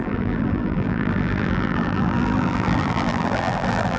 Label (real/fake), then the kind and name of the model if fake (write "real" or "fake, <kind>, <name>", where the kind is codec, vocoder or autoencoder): fake, vocoder, BigVGAN v2